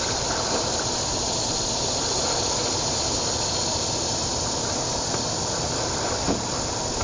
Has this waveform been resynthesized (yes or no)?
no